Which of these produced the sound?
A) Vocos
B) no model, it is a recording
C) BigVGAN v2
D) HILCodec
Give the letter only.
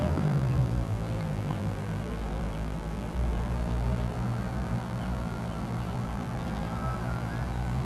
C